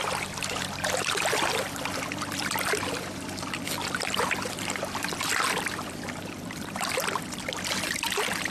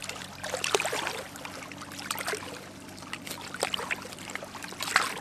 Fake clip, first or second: first